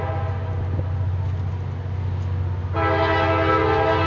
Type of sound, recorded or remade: recorded